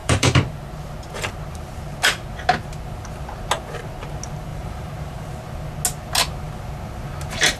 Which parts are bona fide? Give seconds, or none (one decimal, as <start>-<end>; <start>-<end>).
0.5-4.5; 5.3-7.6